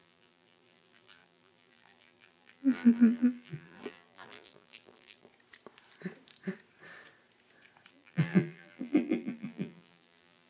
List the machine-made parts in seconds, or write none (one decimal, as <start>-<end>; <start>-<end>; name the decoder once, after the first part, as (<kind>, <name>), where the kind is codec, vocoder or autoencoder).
0.0-5.3 (vocoder, BigVGAN v2); 7.9-10.5